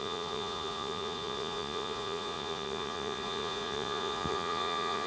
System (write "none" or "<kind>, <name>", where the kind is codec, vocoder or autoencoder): vocoder, Vocos